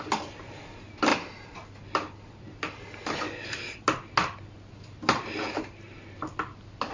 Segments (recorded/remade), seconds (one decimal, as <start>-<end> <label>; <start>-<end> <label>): 0.0-6.9 recorded